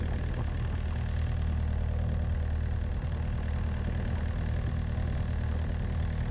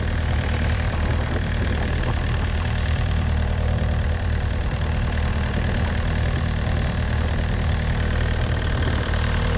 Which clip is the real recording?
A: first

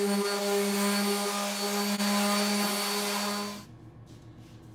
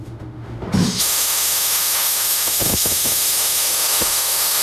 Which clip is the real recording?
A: first